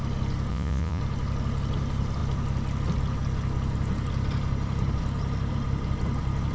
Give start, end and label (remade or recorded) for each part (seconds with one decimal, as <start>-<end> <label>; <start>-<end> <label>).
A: 0.0-0.5 recorded; 0.5-1.0 remade; 1.0-6.5 recorded